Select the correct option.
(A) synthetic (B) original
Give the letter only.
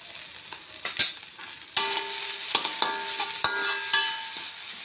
B